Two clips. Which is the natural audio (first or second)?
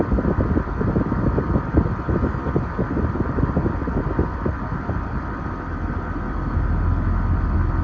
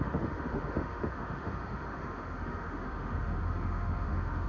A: first